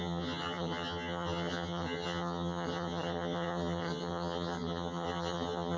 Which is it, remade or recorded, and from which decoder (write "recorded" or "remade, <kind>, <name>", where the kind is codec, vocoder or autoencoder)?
remade, vocoder, HiFi-GAN